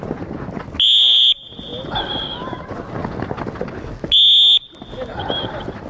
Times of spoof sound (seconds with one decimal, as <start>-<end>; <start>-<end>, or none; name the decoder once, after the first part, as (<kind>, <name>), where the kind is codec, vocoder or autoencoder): none